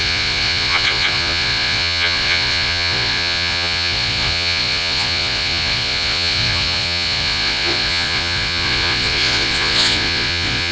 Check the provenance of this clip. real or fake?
fake